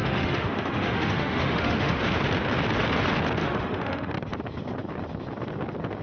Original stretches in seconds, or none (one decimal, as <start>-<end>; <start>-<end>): 2.0-3.4; 4.1-6.0